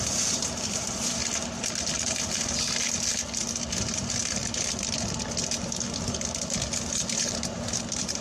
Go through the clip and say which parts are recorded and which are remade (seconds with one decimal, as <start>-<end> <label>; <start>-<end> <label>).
0.0-1.2 remade; 1.2-4.0 recorded; 4.0-4.4 remade; 4.4-6.9 recorded; 6.9-8.2 remade